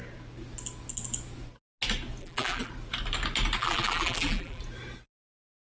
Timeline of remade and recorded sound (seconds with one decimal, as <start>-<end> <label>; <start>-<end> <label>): 0.0-2.2 recorded; 2.2-2.7 remade; 2.7-3.6 recorded; 3.6-4.6 remade; 4.6-5.8 recorded